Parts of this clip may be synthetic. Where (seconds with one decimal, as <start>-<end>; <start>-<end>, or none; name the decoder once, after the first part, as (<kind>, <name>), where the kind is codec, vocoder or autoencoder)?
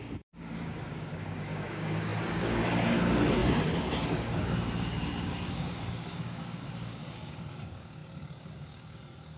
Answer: 0.0-9.4 (codec, DAC)